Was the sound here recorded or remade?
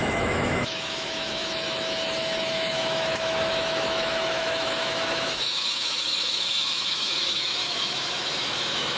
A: remade